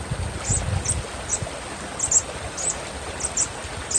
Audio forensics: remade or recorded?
recorded